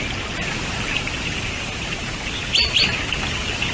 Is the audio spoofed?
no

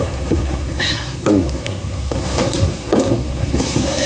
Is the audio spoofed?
yes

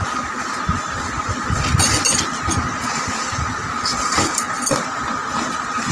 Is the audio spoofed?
no